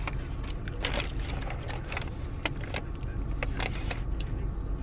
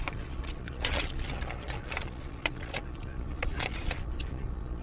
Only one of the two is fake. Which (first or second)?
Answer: second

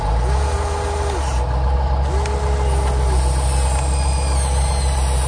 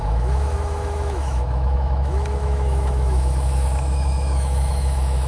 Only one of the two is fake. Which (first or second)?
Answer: second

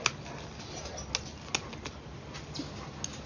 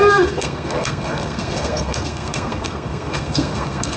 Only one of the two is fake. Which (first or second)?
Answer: second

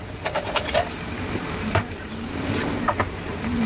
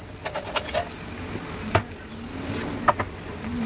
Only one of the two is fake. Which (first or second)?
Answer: first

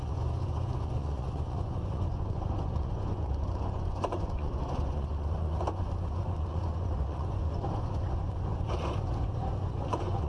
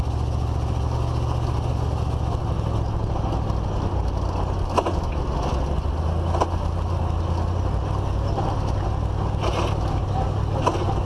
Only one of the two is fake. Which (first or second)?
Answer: first